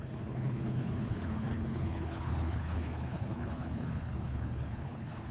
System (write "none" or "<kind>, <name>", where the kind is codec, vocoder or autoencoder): codec, HILCodec